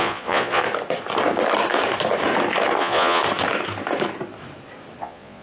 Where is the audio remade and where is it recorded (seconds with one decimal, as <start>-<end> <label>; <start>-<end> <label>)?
0.0-0.6 remade; 0.6-2.8 recorded; 2.8-3.2 remade; 3.2-5.0 recorded; 5.0-5.4 remade